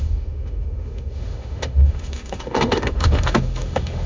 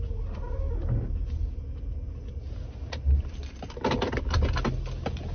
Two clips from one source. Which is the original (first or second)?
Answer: second